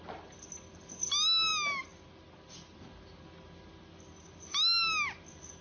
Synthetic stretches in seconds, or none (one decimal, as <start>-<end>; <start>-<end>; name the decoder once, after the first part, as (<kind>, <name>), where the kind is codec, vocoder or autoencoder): none